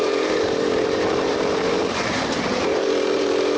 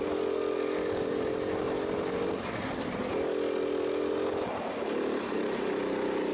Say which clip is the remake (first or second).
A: first